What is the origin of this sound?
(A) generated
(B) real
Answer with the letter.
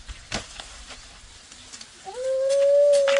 B